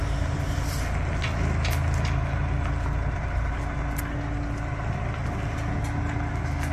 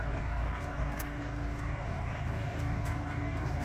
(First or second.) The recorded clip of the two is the first